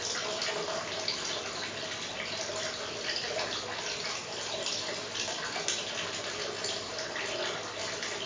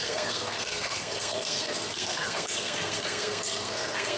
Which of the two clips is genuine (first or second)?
first